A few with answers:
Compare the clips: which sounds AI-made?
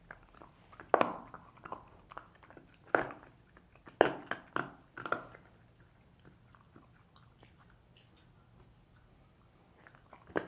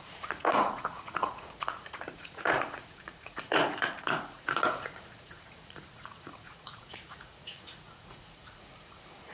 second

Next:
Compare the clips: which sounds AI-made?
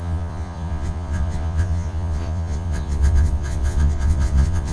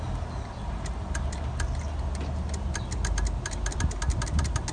first